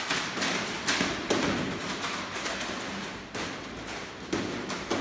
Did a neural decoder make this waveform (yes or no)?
no